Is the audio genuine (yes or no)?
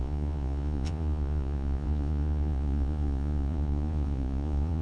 no